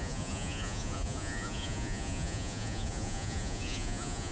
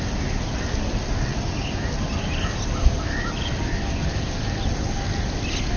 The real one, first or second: second